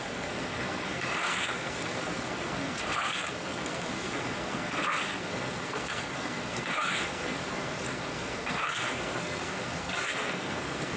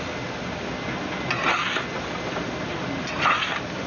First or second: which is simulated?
first